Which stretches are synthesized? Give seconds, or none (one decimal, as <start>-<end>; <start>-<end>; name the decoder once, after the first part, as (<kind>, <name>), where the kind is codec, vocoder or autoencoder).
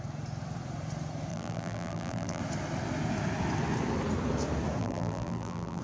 1.3-2.4 (vocoder, BigVGAN v2); 4.8-5.8